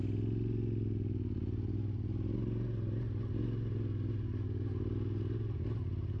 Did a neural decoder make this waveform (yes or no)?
no